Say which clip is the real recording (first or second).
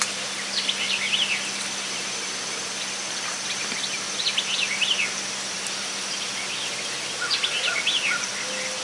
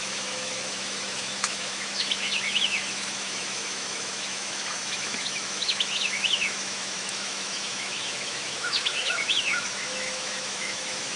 first